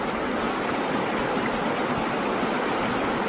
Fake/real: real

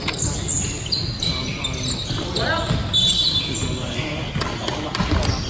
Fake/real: real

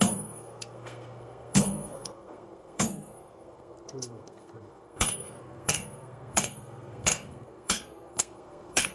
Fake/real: fake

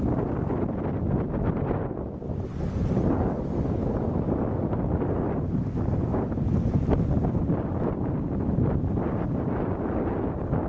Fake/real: real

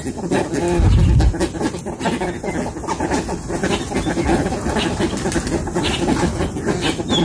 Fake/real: real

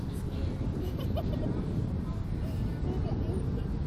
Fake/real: real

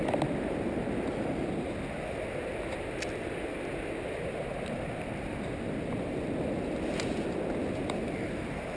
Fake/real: real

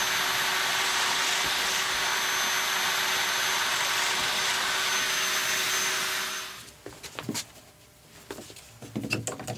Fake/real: real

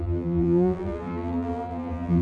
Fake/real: fake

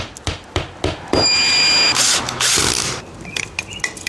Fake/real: real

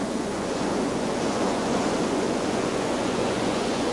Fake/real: fake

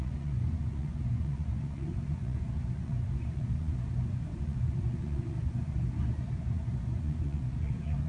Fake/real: fake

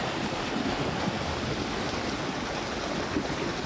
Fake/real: real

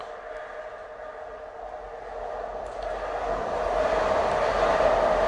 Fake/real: real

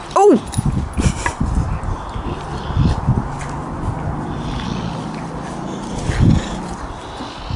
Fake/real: real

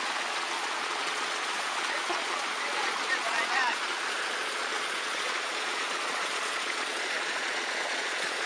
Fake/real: fake